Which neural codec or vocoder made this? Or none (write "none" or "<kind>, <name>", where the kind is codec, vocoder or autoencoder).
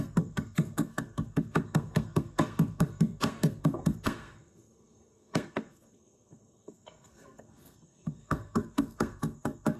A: codec, SNAC